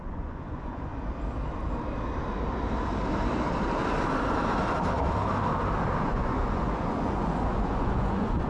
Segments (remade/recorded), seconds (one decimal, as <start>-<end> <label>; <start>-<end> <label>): 0.0-0.9 remade; 0.9-6.0 recorded; 6.0-8.5 remade